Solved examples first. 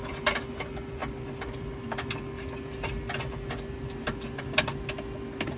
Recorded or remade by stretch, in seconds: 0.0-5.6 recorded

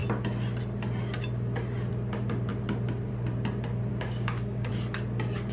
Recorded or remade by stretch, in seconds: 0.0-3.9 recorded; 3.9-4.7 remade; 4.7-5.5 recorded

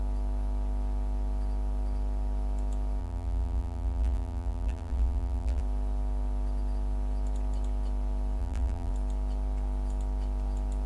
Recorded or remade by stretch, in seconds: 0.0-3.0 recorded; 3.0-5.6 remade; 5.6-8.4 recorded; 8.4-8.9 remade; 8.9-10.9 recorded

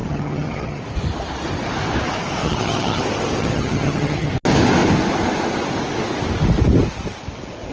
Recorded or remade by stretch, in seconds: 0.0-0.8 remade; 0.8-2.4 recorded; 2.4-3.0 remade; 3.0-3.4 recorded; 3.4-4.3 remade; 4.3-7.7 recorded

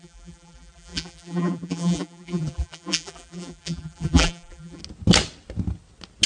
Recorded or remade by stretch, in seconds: 0.0-4.8 remade; 4.8-6.3 recorded

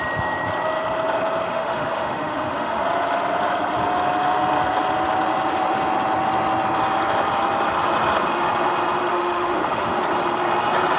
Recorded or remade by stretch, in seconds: 0.0-1.5 recorded; 1.5-2.8 remade; 2.8-9.1 recorded; 9.1-10.0 remade; 10.0-11.0 recorded

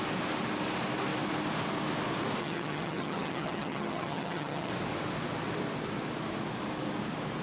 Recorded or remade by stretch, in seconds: 0.0-2.4 recorded; 2.4-4.7 remade; 4.7-7.4 recorded

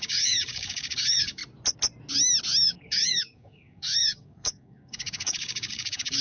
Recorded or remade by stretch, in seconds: 0.0-1.4 remade; 1.4-2.6 recorded; 2.6-6.2 remade